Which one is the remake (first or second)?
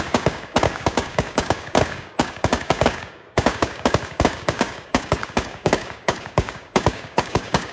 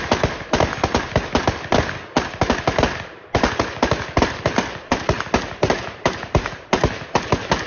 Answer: first